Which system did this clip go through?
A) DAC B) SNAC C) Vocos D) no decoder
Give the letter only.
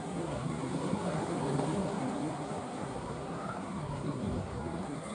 B